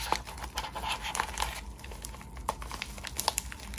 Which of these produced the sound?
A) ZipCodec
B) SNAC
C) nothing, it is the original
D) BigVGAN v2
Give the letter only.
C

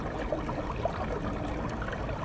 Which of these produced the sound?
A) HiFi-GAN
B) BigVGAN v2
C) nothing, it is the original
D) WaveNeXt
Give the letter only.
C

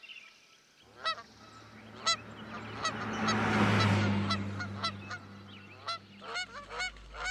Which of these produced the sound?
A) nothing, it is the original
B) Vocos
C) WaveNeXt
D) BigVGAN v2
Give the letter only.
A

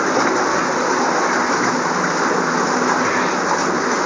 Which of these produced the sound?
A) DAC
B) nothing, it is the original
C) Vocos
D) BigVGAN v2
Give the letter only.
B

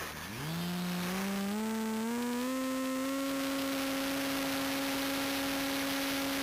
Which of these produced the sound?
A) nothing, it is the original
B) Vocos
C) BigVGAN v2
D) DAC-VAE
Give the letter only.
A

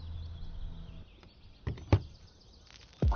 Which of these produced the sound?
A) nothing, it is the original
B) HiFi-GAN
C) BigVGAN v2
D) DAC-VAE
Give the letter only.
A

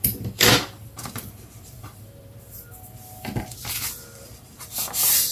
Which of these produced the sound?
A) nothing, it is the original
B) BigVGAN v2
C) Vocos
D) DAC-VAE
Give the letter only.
B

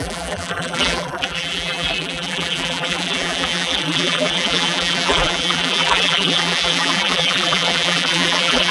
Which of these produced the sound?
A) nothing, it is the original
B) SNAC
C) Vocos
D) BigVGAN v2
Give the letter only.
D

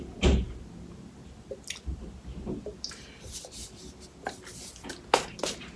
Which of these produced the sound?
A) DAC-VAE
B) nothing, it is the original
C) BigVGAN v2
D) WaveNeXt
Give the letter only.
B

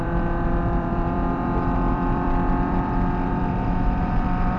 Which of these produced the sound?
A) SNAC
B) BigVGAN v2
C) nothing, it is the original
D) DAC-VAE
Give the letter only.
B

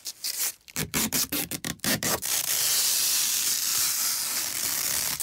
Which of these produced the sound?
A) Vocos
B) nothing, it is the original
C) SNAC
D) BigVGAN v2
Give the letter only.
D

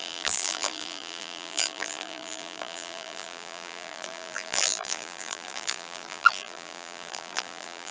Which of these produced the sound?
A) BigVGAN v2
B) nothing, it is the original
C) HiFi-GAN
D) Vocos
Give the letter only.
A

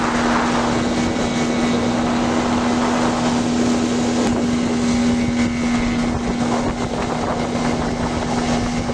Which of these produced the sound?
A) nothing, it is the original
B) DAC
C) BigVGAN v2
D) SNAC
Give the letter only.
A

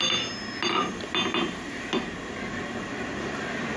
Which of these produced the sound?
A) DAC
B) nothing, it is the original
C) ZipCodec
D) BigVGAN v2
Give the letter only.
B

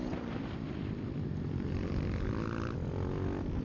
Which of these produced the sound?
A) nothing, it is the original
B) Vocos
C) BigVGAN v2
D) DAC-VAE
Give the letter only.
C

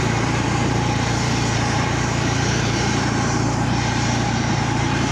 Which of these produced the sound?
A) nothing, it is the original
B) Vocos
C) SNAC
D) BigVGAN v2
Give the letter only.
D